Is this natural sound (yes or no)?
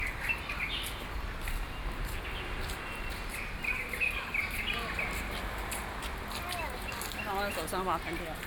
yes